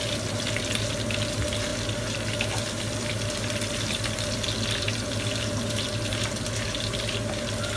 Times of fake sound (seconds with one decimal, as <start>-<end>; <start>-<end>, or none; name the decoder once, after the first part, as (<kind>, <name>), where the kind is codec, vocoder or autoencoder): none